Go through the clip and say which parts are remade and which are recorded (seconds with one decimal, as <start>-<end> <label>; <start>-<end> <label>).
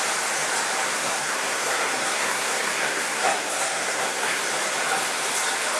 0.0-0.9 recorded; 0.9-4.4 remade; 4.4-5.8 recorded